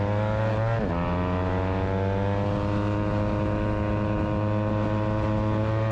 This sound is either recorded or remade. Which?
recorded